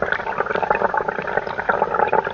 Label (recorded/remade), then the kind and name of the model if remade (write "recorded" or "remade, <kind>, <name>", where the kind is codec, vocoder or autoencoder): recorded